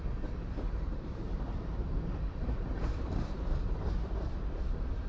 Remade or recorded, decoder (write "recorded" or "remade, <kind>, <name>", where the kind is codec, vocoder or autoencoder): remade, vocoder, BigVGAN v2